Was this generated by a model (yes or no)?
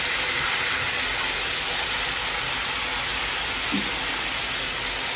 no